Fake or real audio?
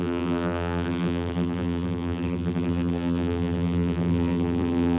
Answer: fake